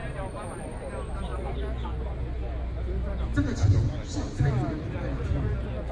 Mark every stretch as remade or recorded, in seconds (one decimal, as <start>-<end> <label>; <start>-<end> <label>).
0.0-5.9 recorded